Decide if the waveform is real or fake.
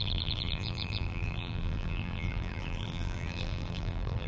fake